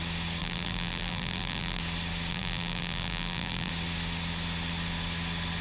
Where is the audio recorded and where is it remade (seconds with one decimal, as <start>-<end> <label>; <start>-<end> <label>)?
0.0-0.4 recorded; 0.4-1.8 remade; 1.8-2.3 recorded; 2.3-3.7 remade; 3.7-5.6 recorded